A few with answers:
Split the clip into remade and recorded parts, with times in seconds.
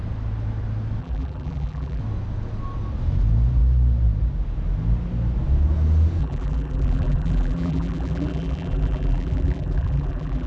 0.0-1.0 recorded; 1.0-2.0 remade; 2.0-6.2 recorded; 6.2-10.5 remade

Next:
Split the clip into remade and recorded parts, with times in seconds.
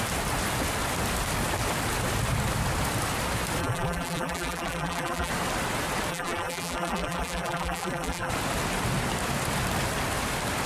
0.0-3.6 recorded; 3.6-5.3 remade; 5.3-6.1 recorded; 6.1-8.3 remade; 8.3-10.7 recorded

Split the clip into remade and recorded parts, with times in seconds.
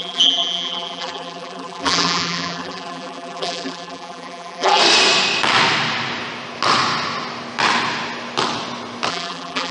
0.0-4.8 remade; 4.8-9.1 recorded; 9.1-9.7 remade